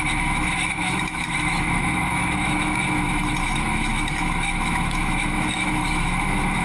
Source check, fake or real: fake